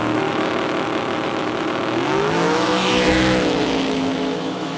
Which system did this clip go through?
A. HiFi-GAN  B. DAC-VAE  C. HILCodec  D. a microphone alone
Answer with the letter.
B